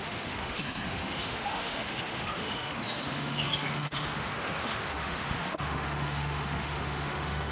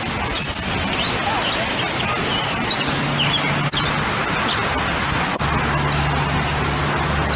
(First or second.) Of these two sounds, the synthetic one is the first